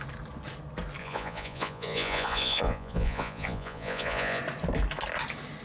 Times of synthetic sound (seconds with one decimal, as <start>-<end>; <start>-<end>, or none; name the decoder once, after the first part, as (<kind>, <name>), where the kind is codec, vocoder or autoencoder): 1.0-4.4 (vocoder, Vocos)